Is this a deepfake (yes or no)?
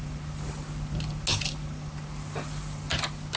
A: no